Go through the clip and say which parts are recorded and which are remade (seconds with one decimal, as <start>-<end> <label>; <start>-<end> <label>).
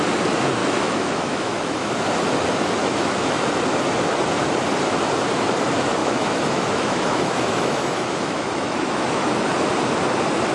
0.0-0.6 recorded; 0.6-1.9 remade; 1.9-2.8 recorded; 2.8-3.4 remade; 3.4-6.0 recorded; 6.0-9.3 remade; 9.3-10.5 recorded